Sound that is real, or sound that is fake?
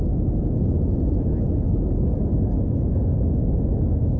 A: real